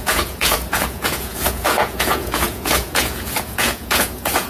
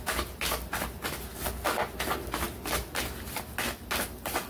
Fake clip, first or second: first